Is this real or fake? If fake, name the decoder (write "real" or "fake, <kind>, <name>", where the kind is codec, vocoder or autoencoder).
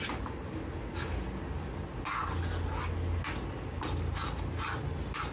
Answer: real